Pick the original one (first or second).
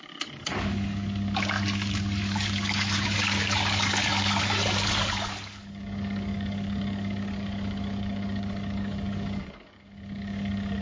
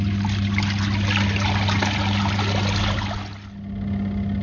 second